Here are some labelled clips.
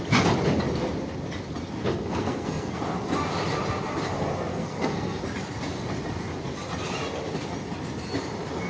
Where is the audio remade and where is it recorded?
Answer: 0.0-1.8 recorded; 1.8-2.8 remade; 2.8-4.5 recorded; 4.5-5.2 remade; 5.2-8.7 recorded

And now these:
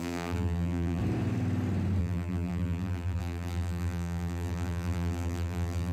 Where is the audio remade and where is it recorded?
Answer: 0.0-1.0 remade; 1.0-2.0 recorded; 2.0-5.9 remade

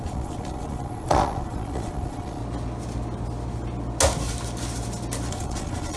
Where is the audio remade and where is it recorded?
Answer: 0.0-2.4 remade; 2.4-5.3 recorded; 5.3-6.0 remade

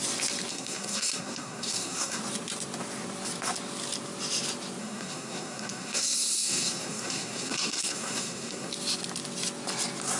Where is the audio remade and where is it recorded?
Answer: 0.0-0.5 recorded; 0.5-2.2 remade; 2.2-4.8 recorded; 4.8-8.7 remade; 8.7-10.2 recorded

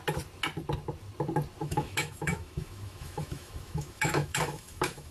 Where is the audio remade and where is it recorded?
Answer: 0.0-1.6 recorded; 1.6-5.1 remade